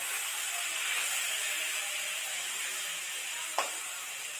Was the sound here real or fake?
real